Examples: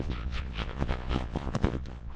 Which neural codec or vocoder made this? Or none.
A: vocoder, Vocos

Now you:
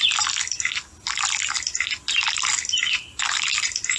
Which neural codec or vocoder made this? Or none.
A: none